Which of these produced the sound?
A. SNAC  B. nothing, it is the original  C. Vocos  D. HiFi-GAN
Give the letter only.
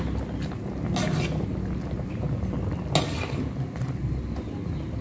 B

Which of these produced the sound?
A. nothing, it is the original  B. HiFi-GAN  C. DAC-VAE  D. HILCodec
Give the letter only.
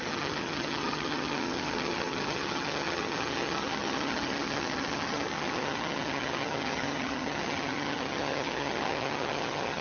B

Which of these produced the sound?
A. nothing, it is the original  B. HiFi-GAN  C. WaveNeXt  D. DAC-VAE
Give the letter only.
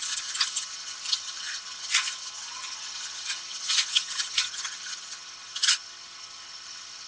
B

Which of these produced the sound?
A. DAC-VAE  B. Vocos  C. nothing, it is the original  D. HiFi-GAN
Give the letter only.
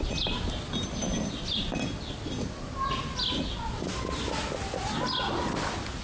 C